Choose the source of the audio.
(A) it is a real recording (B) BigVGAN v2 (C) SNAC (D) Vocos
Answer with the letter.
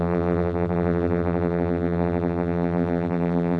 B